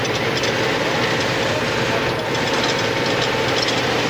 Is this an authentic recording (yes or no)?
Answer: yes